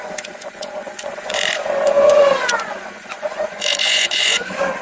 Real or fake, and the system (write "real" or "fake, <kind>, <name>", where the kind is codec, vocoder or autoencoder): fake, vocoder, Vocos